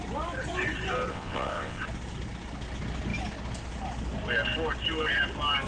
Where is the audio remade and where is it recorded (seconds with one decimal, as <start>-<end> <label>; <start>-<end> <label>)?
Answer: 0.0-1.1 recorded; 1.1-1.8 remade; 1.8-5.7 recorded